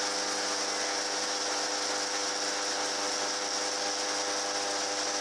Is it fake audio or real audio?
real